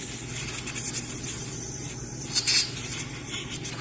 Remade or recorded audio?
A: recorded